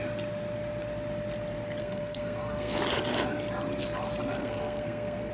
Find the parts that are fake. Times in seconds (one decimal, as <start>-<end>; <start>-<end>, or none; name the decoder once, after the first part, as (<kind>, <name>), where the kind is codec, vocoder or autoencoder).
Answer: 1.8-2.8 (codec, SNAC); 4.4-5.3